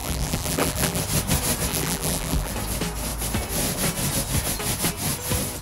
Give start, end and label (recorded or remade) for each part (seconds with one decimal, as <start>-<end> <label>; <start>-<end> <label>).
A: 0.0-1.0 remade; 1.0-1.7 recorded; 1.7-2.5 remade; 2.5-5.6 recorded